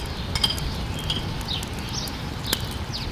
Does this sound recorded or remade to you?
recorded